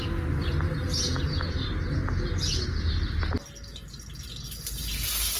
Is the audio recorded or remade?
recorded